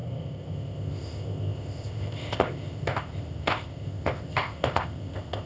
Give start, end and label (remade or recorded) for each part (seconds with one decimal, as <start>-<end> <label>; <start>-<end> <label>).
0.0-5.5 remade